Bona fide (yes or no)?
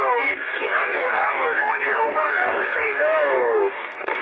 no